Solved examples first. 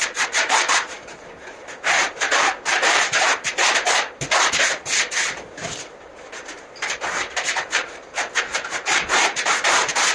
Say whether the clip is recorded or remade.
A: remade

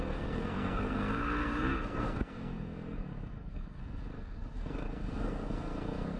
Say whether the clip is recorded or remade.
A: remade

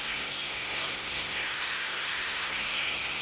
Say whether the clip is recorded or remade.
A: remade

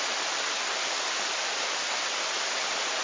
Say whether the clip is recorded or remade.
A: recorded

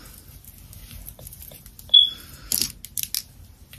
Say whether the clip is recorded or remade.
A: recorded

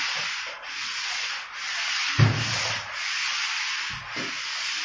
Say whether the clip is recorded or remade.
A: recorded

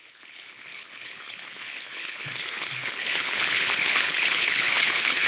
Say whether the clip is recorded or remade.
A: remade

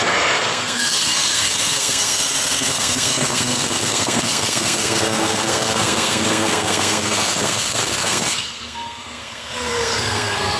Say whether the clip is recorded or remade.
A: remade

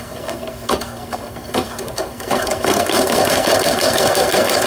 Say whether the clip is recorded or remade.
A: remade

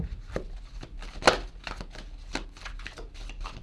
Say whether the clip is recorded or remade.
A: recorded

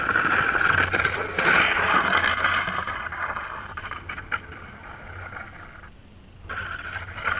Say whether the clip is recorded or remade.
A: recorded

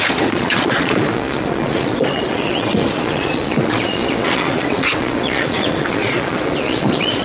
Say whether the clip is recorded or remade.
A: remade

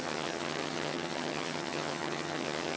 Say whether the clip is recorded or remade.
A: remade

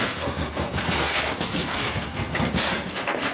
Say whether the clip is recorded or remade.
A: remade